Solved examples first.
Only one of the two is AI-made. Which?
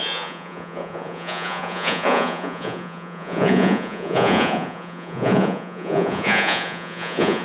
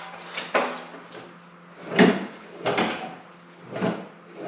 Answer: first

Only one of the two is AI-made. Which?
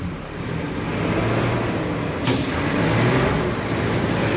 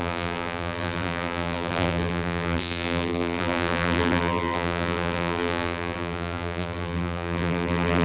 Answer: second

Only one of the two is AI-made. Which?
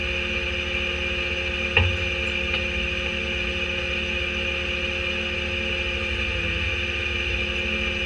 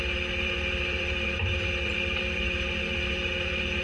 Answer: second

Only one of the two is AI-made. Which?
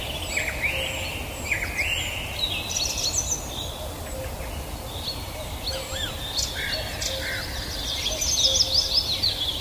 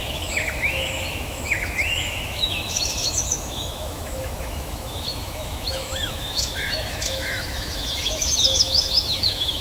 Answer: second